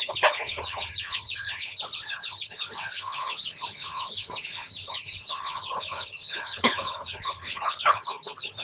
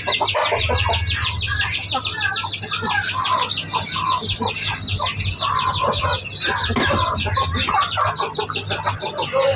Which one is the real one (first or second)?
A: second